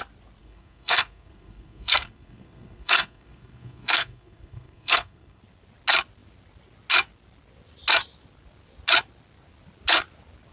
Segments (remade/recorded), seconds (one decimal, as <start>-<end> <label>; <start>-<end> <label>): 0.0-0.4 recorded; 0.4-5.4 remade; 5.4-10.5 recorded

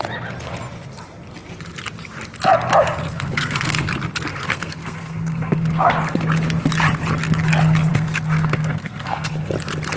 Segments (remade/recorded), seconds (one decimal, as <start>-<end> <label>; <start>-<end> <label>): 0.0-3.0 recorded; 3.0-3.9 remade; 3.9-4.3 recorded; 4.3-6.3 remade; 6.3-7.9 recorded; 7.9-9.3 remade; 9.3-10.0 recorded

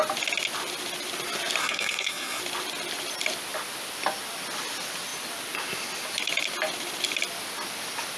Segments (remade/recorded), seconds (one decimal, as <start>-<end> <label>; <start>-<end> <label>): 0.0-1.6 recorded; 1.6-2.4 remade; 2.4-8.2 recorded

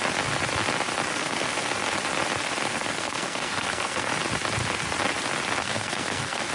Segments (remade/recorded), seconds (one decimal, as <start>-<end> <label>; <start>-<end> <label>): 0.0-1.1 recorded; 1.1-1.7 remade; 1.7-2.7 recorded; 2.7-4.1 remade; 4.1-5.6 recorded; 5.6-6.5 remade

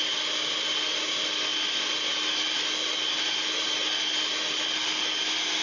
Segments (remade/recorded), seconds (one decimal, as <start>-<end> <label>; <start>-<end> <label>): 0.0-5.6 recorded

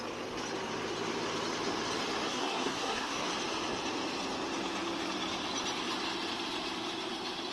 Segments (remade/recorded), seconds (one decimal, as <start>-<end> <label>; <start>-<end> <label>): 0.0-2.3 recorded; 2.3-3.3 remade; 3.3-7.5 recorded

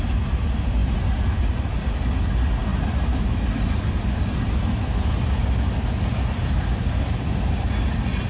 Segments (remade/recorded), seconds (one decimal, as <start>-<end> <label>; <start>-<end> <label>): 0.0-8.3 recorded

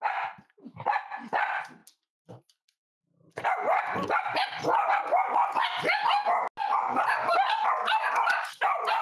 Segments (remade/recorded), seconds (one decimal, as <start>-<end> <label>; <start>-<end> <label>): 0.0-9.0 recorded